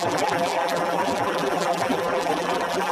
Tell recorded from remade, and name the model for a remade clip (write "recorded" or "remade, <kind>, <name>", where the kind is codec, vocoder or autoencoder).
remade, vocoder, BigVGAN v2